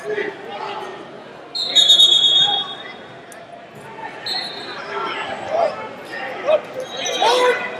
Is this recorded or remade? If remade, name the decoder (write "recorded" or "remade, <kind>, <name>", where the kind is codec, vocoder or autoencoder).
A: recorded